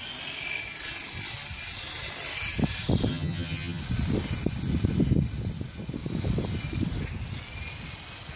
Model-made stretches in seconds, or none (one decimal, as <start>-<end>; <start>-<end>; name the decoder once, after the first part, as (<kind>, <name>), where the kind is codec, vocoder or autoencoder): 3.1-3.8 (vocoder, HiFi-GAN)